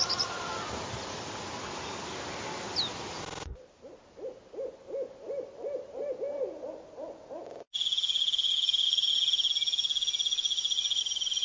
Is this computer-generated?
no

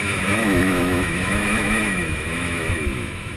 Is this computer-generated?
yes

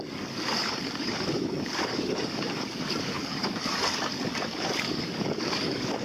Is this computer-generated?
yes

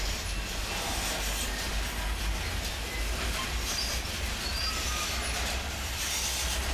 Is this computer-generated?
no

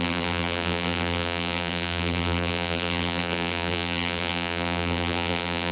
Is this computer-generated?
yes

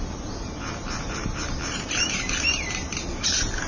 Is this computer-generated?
yes